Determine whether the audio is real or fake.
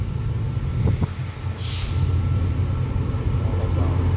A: real